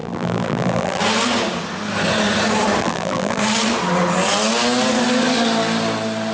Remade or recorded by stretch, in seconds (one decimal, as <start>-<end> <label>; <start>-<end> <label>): 0.0-1.0 remade; 1.0-2.8 recorded; 2.8-3.4 remade; 3.4-6.3 recorded